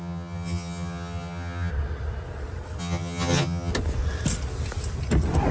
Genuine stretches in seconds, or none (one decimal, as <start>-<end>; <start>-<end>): 1.7-2.8; 3.7-5.5